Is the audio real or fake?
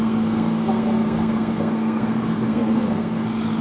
fake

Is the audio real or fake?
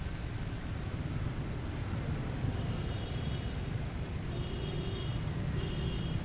real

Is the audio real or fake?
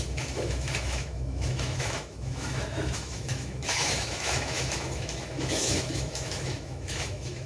fake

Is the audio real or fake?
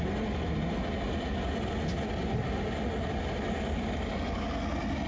real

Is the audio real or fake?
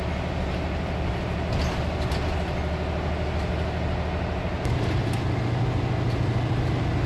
real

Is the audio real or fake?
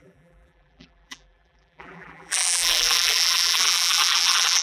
fake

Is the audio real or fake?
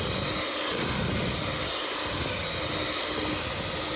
real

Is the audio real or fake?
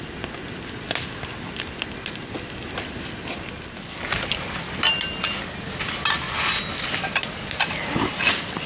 real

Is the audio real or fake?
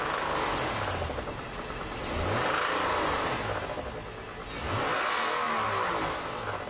real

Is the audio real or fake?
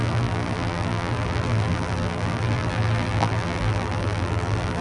fake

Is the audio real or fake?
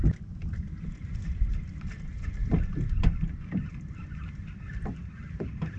real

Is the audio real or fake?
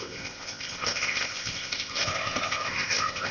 fake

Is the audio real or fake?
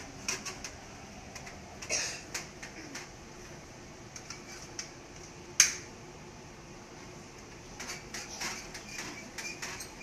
real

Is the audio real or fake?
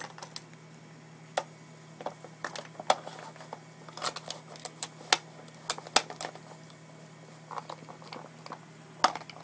real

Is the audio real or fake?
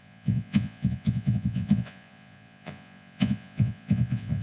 fake